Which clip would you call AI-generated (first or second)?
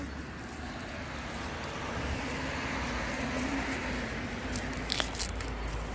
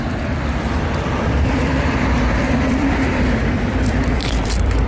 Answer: second